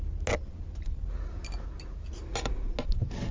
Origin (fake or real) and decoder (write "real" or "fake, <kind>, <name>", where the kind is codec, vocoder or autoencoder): real